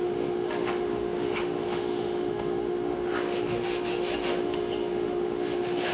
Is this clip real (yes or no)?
no